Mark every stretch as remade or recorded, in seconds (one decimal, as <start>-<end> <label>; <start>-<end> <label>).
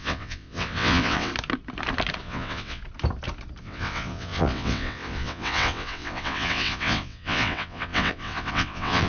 0.0-1.3 remade; 1.3-2.2 recorded; 2.2-2.8 remade; 2.8-3.6 recorded; 3.6-9.1 remade